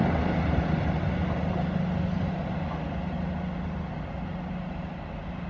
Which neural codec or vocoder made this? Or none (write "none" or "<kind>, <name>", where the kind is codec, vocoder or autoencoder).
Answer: none